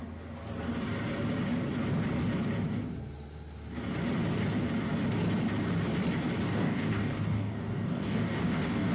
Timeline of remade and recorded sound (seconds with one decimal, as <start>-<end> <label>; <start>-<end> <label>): 0.0-6.5 recorded; 6.5-8.9 remade